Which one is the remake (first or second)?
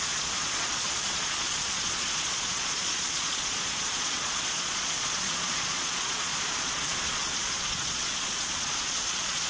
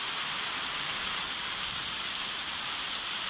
first